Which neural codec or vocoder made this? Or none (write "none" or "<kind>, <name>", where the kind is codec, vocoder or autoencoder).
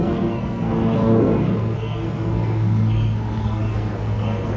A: codec, SNAC